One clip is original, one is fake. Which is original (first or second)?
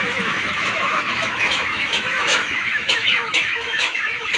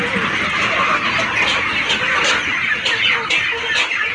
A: second